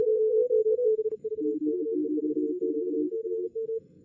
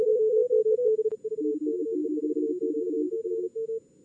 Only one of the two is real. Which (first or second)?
second